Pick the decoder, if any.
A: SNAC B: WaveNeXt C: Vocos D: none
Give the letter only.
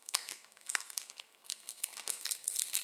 A